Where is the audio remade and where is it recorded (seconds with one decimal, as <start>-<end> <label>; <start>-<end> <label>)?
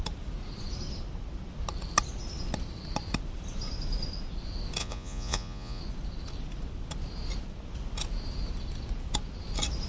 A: 0.0-4.8 recorded; 4.8-5.8 remade; 5.8-9.9 recorded